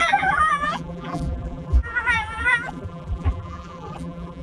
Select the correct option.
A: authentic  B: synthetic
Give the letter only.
B